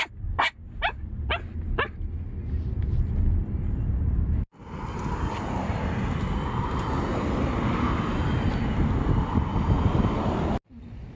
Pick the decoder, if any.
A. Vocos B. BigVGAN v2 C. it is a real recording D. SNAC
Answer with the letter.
C